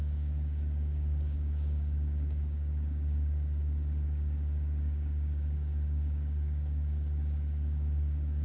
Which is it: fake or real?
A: fake